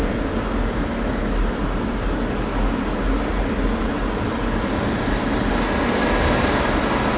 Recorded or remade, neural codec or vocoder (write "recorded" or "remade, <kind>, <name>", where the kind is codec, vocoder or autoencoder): recorded